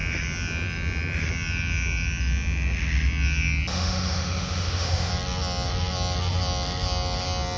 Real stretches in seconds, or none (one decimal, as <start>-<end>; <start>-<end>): 0.0-3.7; 5.1-7.6